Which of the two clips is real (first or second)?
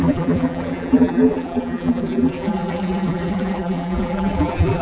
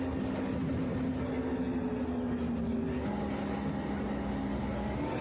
second